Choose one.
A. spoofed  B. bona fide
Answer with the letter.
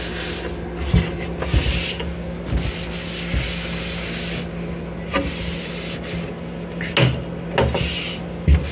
B